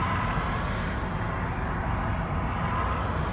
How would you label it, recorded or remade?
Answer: recorded